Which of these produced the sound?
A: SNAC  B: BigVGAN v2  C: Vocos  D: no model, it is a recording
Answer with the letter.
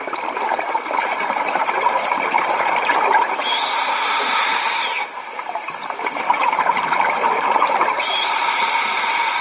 B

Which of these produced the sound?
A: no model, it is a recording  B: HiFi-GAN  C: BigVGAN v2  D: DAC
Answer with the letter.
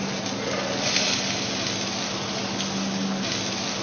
A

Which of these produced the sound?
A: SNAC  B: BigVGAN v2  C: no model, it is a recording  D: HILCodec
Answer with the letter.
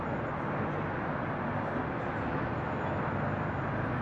C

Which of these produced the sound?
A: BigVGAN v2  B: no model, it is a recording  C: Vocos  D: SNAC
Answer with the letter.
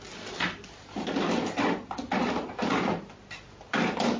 B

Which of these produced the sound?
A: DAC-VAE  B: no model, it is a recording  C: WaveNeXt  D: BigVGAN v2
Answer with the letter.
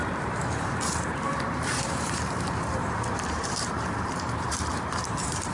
D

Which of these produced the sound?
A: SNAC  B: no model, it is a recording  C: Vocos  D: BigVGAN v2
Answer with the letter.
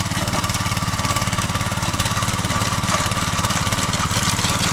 D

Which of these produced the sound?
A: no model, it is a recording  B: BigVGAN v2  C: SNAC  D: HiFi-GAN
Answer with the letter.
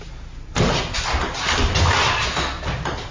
A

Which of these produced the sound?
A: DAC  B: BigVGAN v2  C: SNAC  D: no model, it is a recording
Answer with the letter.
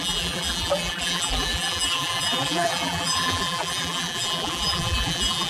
B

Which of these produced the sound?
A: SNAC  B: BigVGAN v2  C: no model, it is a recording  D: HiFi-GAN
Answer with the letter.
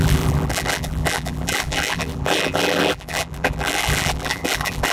B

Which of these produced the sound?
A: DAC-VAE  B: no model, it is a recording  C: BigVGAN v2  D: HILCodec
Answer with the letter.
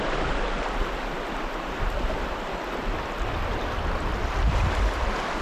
B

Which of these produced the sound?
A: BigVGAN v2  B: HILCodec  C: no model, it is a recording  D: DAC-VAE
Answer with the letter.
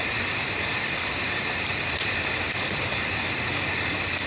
A